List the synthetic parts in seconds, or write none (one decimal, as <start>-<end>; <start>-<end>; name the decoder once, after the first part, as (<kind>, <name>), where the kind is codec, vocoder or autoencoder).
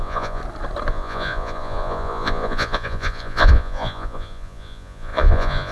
0.0-0.4 (vocoder, Vocos); 0.9-5.7